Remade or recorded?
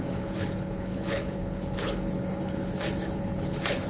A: remade